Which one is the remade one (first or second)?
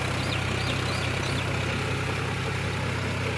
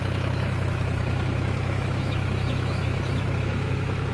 second